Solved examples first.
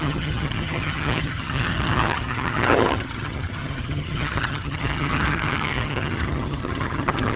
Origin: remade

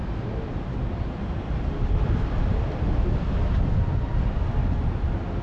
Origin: recorded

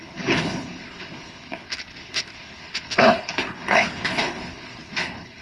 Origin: remade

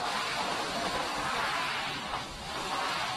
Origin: recorded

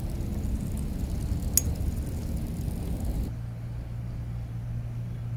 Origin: recorded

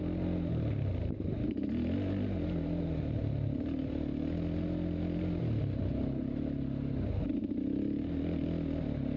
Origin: recorded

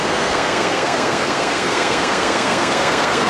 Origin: remade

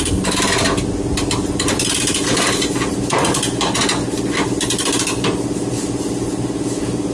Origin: recorded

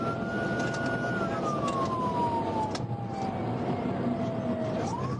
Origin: recorded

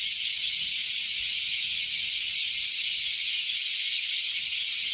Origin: recorded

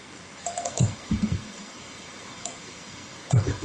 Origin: remade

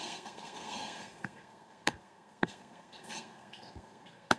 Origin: remade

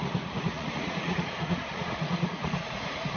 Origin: remade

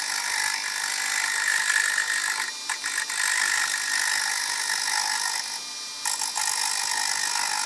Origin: recorded